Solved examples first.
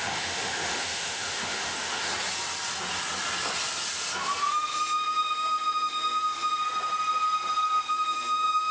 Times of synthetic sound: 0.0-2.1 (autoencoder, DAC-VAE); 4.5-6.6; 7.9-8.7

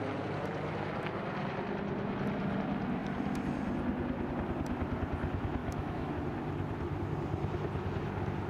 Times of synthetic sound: 5.6-6.1 (autoencoder, DAC-VAE)

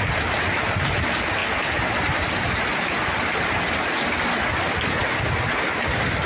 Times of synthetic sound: 3.3-3.9 (vocoder, BigVGAN v2)

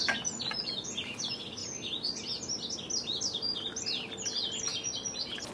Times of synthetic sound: none

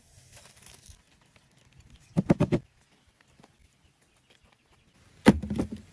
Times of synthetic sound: none